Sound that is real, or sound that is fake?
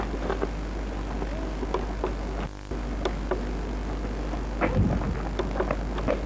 real